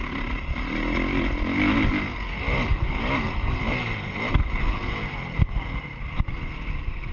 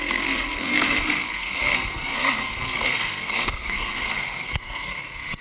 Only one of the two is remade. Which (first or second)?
second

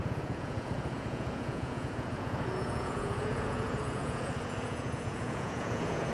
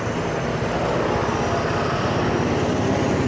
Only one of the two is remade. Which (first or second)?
first